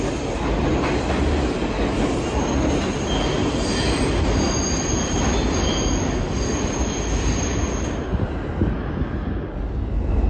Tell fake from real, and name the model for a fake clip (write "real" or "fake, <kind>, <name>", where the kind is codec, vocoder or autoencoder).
real